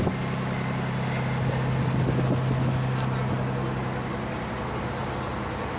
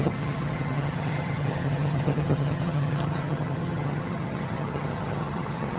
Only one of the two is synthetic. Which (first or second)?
second